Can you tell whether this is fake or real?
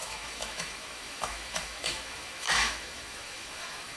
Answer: fake